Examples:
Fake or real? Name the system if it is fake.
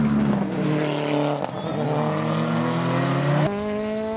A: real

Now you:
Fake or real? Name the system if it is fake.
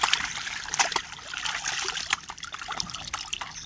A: fake, vocoder, BigVGAN v2